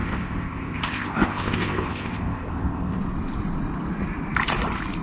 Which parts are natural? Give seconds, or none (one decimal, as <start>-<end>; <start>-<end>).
3.0-5.0